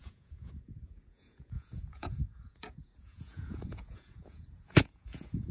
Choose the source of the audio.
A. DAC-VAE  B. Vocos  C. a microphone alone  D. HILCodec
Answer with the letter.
B